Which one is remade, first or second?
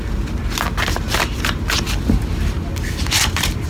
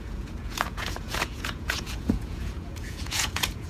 second